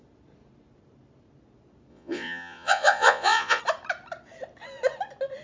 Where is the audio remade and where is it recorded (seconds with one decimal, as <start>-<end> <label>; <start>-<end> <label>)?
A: 0.0-1.9 recorded; 1.9-3.6 remade; 3.6-5.4 recorded